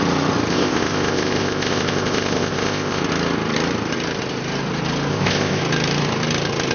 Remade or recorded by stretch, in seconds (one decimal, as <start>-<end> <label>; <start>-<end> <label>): 0.0-0.5 recorded; 0.5-3.0 remade; 3.0-5.1 recorded; 5.1-5.6 remade; 5.6-6.7 recorded